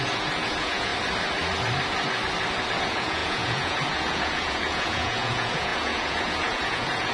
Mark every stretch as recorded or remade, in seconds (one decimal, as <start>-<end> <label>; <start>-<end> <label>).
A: 0.0-0.9 remade; 0.9-2.8 recorded; 2.8-7.1 remade